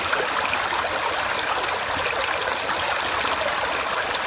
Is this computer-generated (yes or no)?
no